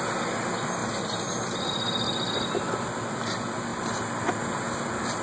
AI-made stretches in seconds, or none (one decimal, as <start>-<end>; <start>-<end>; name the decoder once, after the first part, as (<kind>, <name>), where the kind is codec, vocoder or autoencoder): none